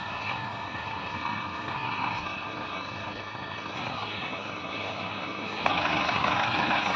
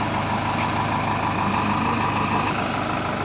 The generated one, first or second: first